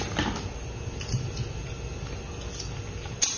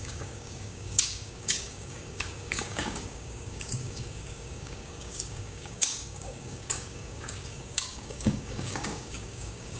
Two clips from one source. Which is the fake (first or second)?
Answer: second